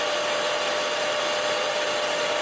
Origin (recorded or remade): recorded